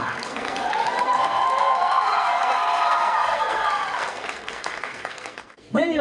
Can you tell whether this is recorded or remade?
remade